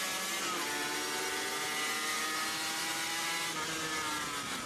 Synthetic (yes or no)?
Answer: no